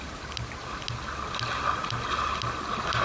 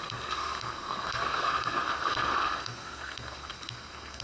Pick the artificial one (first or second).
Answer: second